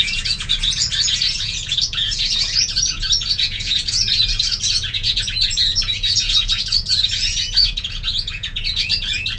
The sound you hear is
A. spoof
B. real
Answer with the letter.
A